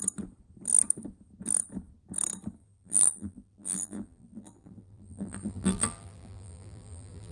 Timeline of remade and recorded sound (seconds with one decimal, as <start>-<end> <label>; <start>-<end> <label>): 0.0-2.6 recorded; 2.6-7.3 remade